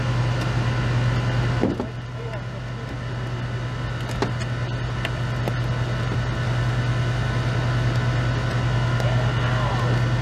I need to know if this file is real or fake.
real